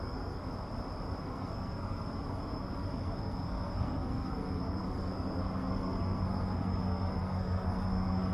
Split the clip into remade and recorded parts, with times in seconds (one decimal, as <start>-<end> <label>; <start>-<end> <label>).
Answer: 0.0-0.5 remade; 0.5-1.2 recorded; 1.2-8.3 remade